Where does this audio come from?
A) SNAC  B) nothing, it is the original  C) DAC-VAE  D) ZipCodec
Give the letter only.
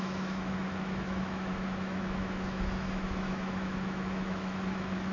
C